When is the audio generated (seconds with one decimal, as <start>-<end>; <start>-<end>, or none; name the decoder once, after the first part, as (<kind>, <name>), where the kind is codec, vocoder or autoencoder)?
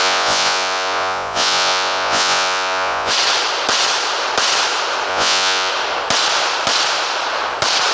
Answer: 0.0-3.1 (vocoder, Vocos); 5.1-5.7